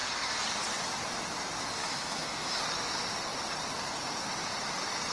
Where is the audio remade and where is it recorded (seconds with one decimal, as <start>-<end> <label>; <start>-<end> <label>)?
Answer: 0.0-1.8 recorded; 1.8-2.6 remade; 2.6-5.1 recorded